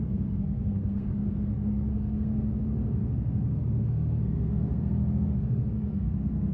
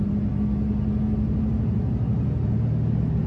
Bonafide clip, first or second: second